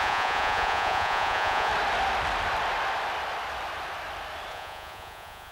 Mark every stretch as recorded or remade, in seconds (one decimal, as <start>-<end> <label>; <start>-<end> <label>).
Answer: 0.0-1.7 remade; 1.7-4.5 recorded; 4.5-5.5 remade

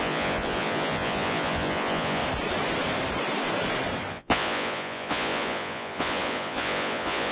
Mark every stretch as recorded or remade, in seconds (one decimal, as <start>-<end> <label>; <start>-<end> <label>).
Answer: 0.0-2.2 remade; 2.2-4.1 recorded; 4.1-7.3 remade

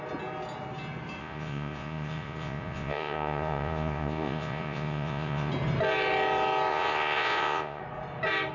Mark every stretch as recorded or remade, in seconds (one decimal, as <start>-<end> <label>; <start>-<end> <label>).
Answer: 0.0-1.2 recorded; 1.2-5.5 remade; 5.5-6.7 recorded; 6.7-7.8 remade; 7.8-8.5 recorded